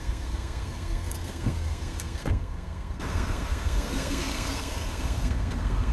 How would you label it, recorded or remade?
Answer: remade